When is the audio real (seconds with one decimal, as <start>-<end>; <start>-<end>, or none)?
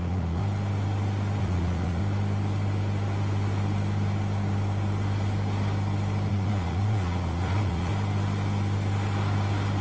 0.4-1.4; 2.0-6.3; 7.9-9.8